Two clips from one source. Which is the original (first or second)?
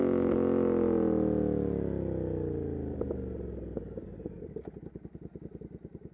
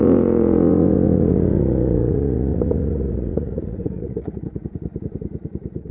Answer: first